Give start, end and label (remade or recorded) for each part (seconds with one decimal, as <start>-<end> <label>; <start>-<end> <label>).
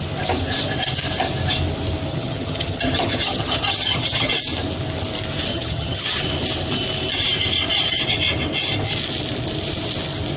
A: 0.0-2.1 recorded; 2.1-4.3 remade; 4.3-5.5 recorded; 5.5-6.2 remade; 6.2-10.4 recorded